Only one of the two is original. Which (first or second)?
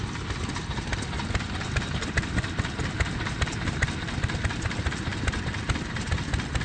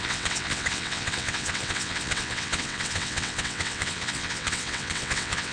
first